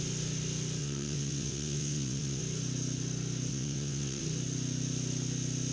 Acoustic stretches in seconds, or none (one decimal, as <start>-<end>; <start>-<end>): 0.0-0.8; 2.4-3.5; 4.2-5.7